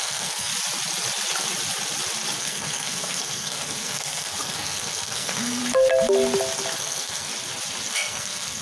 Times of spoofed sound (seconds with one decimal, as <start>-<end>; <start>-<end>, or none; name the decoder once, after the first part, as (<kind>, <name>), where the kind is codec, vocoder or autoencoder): 0.0-0.5 (codec, SNAC); 2.4-5.6; 6.8-7.3; 7.9-8.6